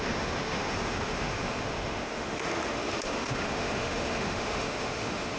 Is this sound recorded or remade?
remade